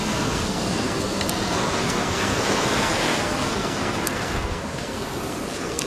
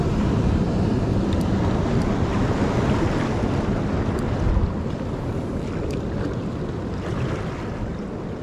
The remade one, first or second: first